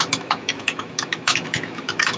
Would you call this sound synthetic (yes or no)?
yes